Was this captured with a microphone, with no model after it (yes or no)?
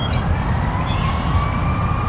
yes